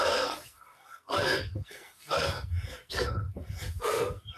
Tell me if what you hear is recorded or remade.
remade